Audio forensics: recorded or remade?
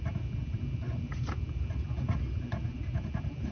recorded